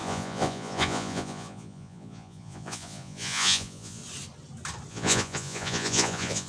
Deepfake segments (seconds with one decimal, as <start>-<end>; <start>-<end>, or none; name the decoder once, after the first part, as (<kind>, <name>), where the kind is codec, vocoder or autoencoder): 0.0-4.0 (vocoder, Vocos); 4.9-6.5